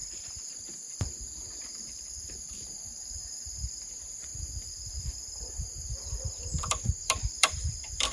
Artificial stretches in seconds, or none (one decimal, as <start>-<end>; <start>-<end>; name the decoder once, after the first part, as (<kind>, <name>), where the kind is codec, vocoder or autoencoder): 0.0-4.3 (vocoder, BigVGAN v2); 5.5-8.1